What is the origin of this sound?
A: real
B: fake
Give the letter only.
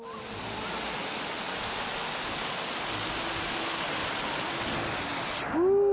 A